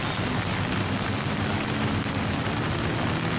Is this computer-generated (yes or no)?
no